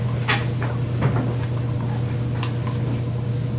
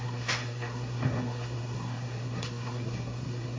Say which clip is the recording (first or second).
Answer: first